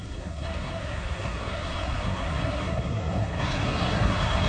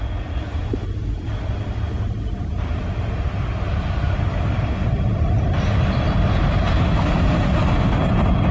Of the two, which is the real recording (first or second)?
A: second